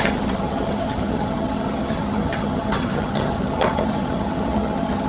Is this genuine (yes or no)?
no